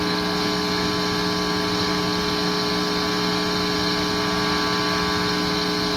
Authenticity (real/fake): real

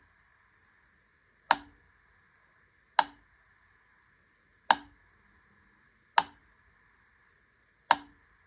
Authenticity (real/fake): real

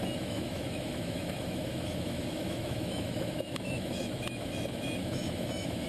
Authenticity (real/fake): fake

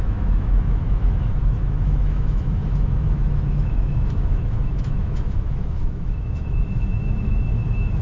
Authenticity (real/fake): fake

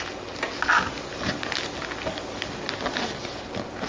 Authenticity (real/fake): real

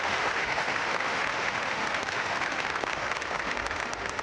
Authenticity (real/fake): fake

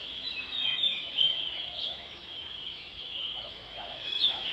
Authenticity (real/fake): fake